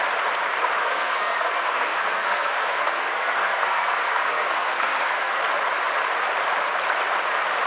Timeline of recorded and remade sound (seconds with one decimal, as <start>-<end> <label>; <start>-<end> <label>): 0.0-0.8 recorded; 0.8-5.4 remade; 5.4-7.7 recorded